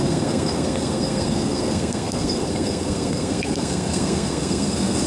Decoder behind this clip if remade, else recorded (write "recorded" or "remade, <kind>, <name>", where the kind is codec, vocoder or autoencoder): remade, codec, SNAC